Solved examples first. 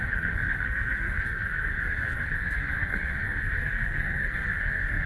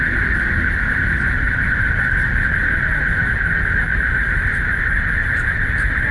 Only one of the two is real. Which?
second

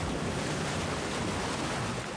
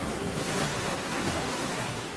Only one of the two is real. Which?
first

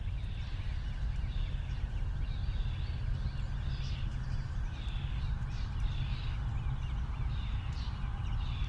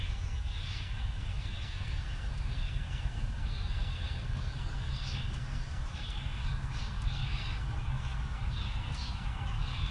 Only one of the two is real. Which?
first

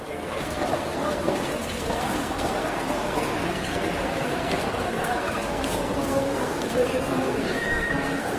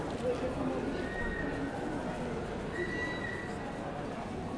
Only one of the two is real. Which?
second